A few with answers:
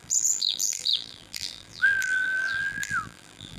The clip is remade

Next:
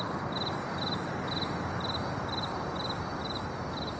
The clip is recorded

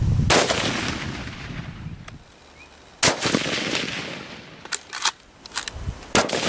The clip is recorded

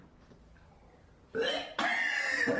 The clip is recorded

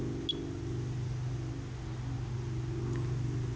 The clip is recorded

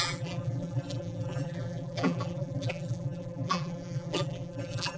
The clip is remade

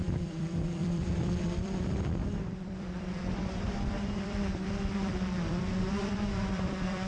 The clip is remade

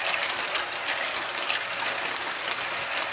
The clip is recorded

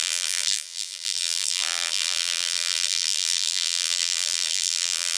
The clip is remade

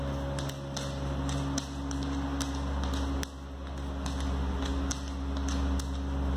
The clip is recorded